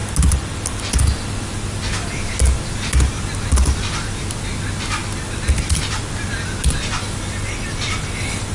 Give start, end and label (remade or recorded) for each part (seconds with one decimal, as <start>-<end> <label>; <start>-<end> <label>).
0.0-8.5 recorded